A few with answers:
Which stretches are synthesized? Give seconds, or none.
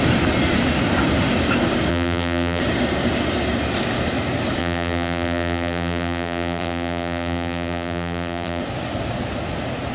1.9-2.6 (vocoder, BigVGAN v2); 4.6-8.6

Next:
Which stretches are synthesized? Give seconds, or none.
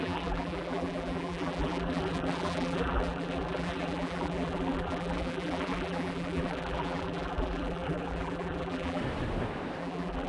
0.0-9.0 (vocoder, BigVGAN v2); 9.8-10.3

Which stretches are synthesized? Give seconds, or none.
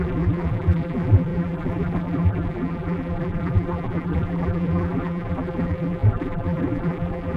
0.0-7.4 (vocoder, BigVGAN v2)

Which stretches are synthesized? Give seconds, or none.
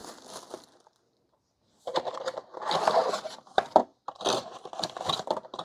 3.9-4.4 (vocoder, BigVGAN v2)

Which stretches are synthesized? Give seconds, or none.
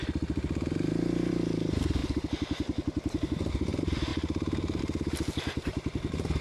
none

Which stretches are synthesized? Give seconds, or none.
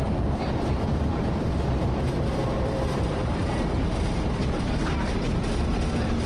0.0-6.3 (vocoder, BigVGAN v2)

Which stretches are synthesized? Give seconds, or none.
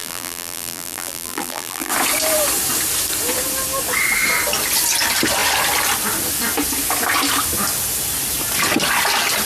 0.0-1.9 (vocoder, BigVGAN v2)